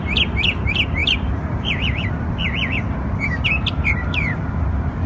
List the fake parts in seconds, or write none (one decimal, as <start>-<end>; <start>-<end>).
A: 1.0-2.3